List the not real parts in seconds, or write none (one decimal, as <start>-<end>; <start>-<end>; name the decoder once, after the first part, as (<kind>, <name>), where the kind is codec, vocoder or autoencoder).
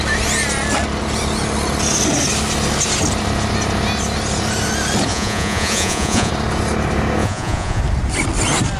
5.1-6.3 (vocoder, Vocos); 7.2-7.8